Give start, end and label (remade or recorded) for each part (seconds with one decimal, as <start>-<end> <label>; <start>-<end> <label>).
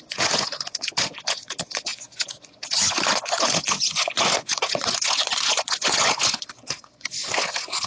0.0-7.9 remade